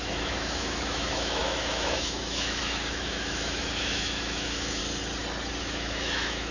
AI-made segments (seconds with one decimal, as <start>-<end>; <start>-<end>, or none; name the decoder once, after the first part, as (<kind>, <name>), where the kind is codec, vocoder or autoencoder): 0.0-4.8 (autoencoder, DAC-VAE); 5.6-6.5